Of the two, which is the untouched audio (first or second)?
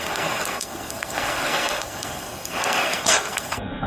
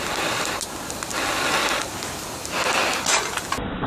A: second